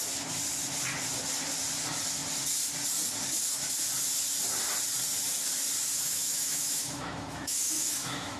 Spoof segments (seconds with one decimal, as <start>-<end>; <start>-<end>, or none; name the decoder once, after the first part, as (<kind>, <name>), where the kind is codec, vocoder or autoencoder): 5.9-8.4 (autoencoder, DAC-VAE)